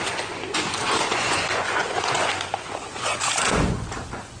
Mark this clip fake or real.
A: fake